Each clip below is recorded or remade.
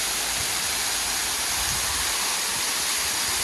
recorded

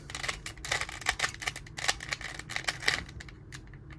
recorded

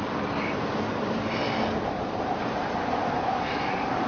recorded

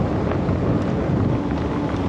recorded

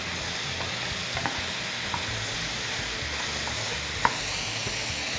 recorded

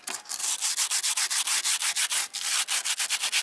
recorded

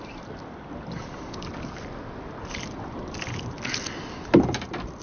recorded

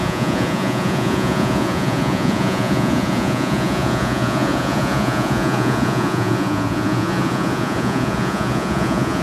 remade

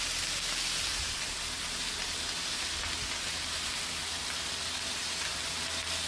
recorded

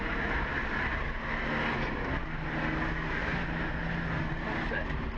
recorded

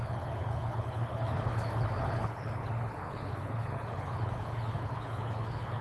remade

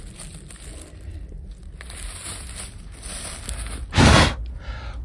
recorded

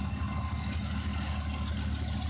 recorded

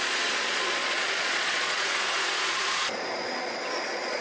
remade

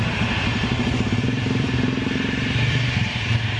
remade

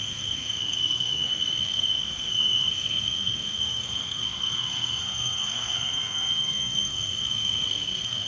remade